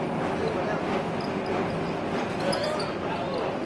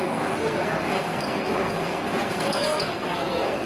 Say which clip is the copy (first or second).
second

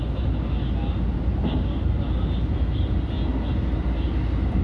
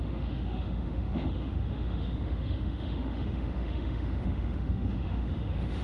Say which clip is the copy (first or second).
second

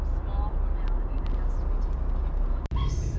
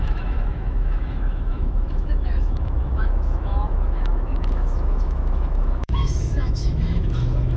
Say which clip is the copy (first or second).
second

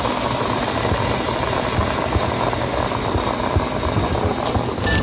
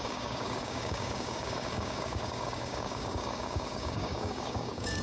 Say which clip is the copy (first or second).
second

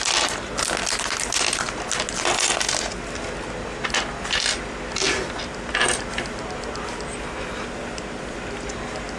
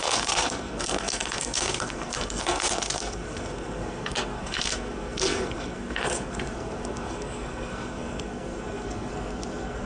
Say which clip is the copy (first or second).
second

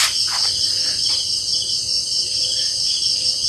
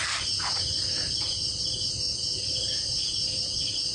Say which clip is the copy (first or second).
second